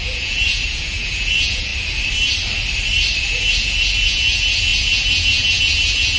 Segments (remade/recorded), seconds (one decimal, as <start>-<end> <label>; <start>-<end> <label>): 0.0-1.7 remade; 1.7-3.2 recorded; 3.2-6.2 remade

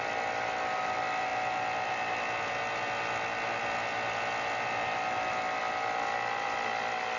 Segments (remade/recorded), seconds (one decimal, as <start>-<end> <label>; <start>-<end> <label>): 0.0-7.2 recorded

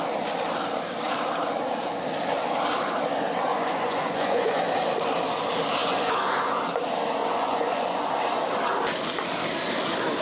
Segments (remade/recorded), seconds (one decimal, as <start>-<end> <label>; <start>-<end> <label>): 0.0-3.5 recorded; 3.5-4.6 remade; 4.6-5.8 recorded; 5.8-6.5 remade; 6.5-7.2 recorded; 7.2-8.1 remade; 8.1-10.2 recorded

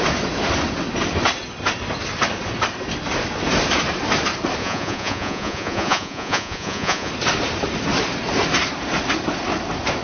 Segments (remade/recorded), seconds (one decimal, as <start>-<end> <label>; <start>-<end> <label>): 0.0-4.6 recorded; 4.6-7.1 remade; 7.1-10.0 recorded